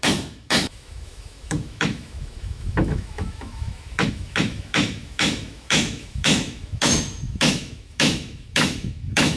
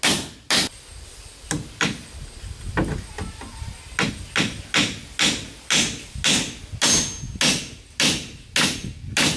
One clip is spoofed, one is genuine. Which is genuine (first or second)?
second